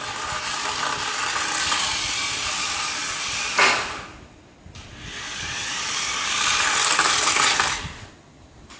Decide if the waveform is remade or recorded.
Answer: recorded